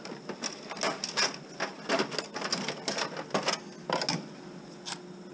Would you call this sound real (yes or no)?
yes